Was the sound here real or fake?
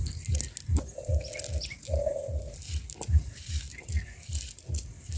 real